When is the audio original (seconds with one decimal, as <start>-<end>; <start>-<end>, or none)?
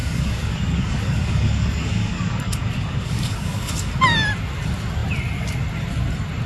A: 3.9-6.5